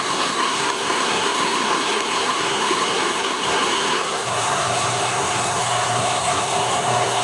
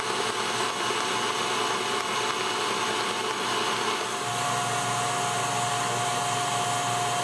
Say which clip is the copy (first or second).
first